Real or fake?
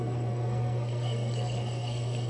fake